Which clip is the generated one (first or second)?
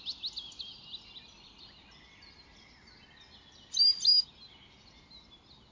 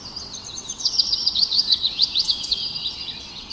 second